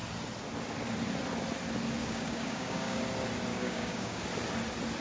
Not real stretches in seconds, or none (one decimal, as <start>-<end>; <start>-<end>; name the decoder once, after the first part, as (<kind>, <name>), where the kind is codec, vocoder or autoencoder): 2.0-3.0 (codec, DAC); 3.5-4.2